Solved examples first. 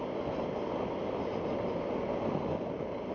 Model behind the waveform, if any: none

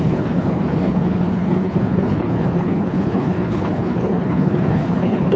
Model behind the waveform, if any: codec, HILCodec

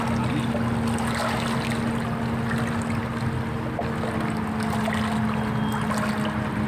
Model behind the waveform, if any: none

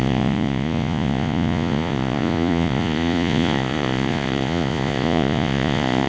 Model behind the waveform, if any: vocoder, Vocos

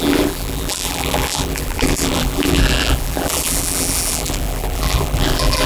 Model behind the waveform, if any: vocoder, BigVGAN v2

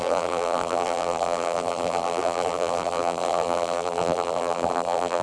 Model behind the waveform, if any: vocoder, BigVGAN v2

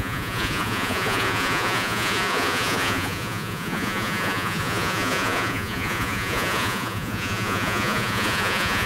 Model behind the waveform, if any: vocoder, Vocos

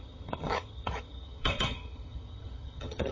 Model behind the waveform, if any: vocoder, HiFi-GAN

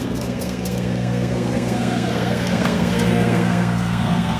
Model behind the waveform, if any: codec, SNAC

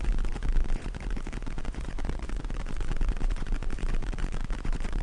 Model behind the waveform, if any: vocoder, Vocos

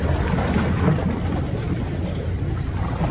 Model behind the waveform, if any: none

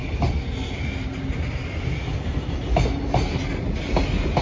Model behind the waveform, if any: none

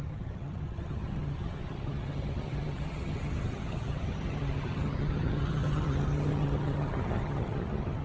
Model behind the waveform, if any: vocoder, HiFi-GAN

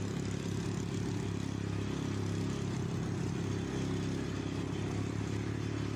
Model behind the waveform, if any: none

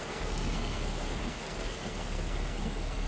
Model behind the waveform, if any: codec, SNAC